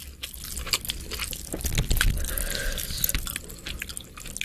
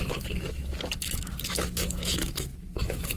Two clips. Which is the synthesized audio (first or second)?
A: second